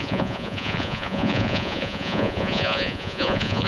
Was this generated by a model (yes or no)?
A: yes